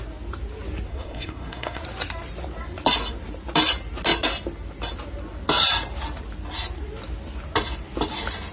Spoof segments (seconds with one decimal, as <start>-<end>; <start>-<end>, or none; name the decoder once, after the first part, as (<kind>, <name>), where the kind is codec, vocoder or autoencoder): 0.9-1.8 (codec, SNAC)